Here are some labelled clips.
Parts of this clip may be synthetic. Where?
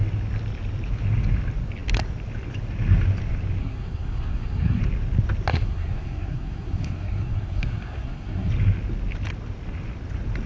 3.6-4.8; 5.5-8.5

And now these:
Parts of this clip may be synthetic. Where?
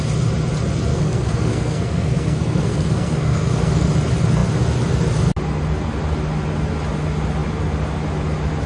0.9-3.9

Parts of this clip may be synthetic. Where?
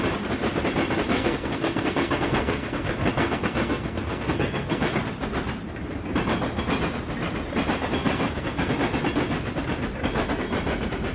1.1-5.0; 8.0-8.7